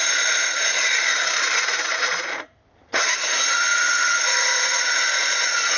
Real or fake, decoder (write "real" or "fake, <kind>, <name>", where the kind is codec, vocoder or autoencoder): fake, vocoder, Vocos